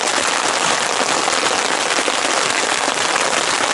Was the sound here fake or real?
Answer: real